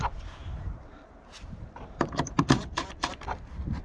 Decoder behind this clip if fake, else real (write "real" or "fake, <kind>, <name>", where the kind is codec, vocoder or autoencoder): fake, vocoder, BigVGAN v2